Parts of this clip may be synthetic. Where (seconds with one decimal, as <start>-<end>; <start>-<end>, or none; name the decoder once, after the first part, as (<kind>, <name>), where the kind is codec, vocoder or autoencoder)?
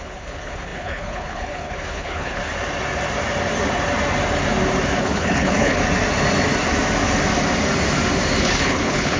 0.0-2.4 (codec, HILCodec); 5.0-5.8; 8.4-9.2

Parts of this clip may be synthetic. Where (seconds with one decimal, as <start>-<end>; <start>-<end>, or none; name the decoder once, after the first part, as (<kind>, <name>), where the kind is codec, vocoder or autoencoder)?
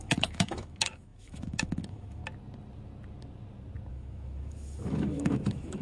0.0-2.2 (autoencoder, DAC-VAE); 3.9-5.8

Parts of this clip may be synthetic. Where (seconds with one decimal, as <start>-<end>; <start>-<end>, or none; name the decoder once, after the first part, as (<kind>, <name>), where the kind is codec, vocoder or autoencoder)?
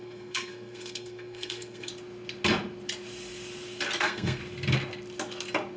0.0-1.9 (codec, SNAC); 4.0-4.4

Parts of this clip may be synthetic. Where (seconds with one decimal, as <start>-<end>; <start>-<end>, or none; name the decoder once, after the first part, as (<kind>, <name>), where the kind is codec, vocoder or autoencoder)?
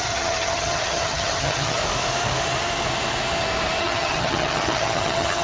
0.0-1.8 (vocoder, HiFi-GAN); 3.8-5.4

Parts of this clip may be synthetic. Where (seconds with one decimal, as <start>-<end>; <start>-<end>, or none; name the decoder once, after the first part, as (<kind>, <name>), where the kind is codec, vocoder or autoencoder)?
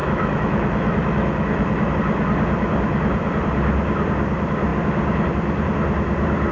0.0-1.9 (autoencoder, DAC-VAE)